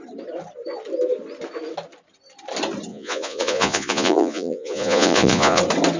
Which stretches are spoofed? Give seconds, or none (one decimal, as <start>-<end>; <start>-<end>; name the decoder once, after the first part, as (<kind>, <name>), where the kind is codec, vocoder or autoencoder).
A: 2.9-5.6 (vocoder, Vocos)